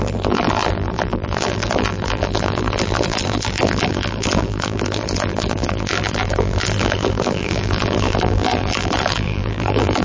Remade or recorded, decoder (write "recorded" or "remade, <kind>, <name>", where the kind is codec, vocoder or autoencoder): remade, vocoder, BigVGAN v2